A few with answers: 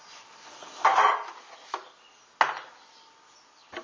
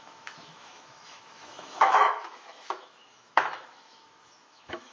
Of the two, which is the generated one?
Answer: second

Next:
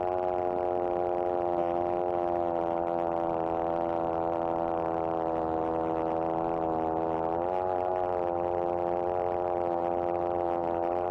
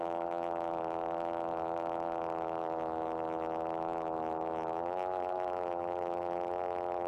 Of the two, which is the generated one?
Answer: second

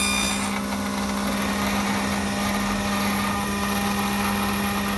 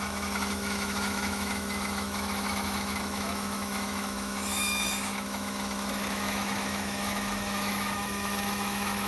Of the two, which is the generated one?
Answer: second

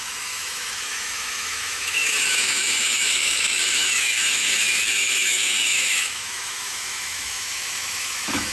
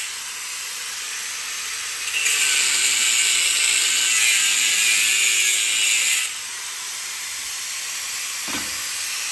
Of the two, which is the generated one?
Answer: first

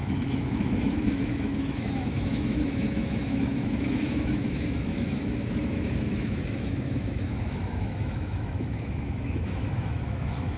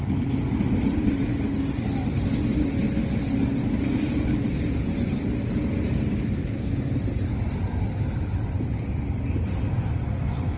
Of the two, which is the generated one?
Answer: first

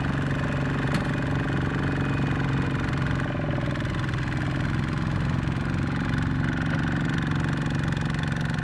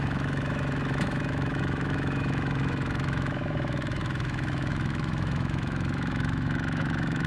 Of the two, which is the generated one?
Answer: second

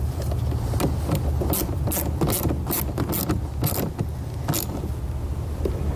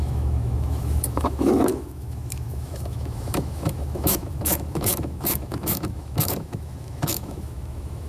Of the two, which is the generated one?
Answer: second